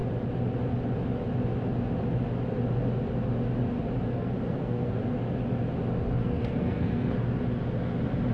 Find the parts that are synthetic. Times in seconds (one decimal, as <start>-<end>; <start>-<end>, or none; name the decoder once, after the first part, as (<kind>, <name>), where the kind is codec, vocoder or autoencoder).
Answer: 4.1-5.0 (codec, SNAC); 6.2-7.1